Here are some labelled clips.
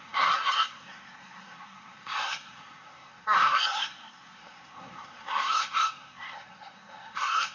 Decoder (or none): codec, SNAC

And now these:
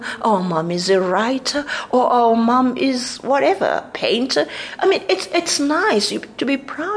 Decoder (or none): none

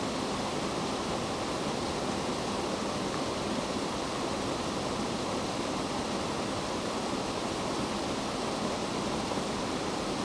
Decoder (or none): none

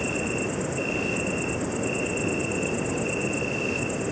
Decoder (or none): none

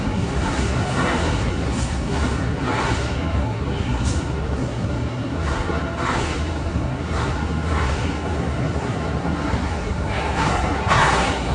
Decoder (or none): codec, SNAC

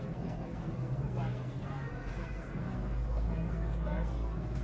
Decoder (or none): codec, SNAC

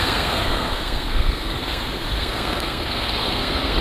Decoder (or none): codec, SNAC